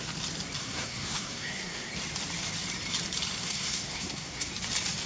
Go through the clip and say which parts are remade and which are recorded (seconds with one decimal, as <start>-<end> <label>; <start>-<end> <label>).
0.0-0.6 recorded; 0.6-1.9 remade; 1.9-3.4 recorded; 3.4-4.5 remade; 4.5-5.1 recorded